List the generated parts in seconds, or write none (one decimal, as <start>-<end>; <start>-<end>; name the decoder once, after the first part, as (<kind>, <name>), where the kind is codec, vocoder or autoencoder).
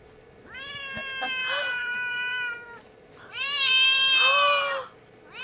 1.4-4.2 (vocoder, BigVGAN v2)